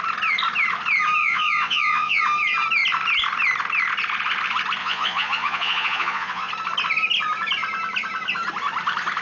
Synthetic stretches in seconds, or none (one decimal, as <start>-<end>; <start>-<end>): 1.2-2.2; 4.8-6.5

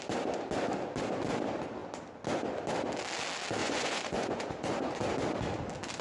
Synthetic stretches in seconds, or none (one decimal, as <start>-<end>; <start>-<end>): 3.6-4.9

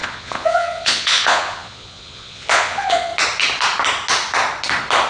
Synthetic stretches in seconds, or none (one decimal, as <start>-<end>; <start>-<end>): 0.0-3.1

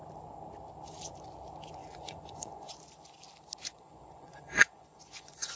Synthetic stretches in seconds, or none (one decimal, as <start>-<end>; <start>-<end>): 1.8-2.7; 3.7-5.6

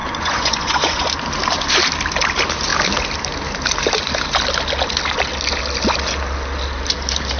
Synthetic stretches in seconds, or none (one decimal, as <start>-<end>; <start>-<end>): 0.0-1.1

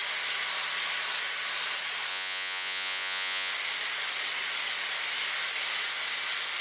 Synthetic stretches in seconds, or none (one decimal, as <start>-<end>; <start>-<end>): 2.1-3.5